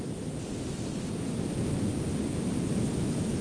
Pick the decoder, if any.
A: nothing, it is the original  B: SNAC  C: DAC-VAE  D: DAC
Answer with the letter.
A